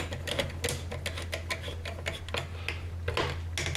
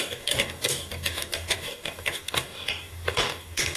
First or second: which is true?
first